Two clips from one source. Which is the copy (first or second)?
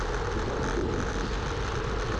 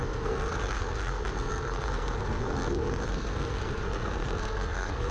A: second